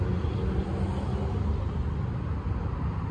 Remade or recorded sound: recorded